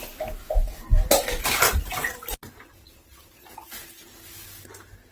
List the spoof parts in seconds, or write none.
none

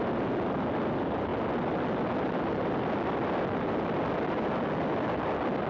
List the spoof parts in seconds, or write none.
none